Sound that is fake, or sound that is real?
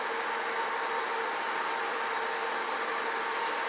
real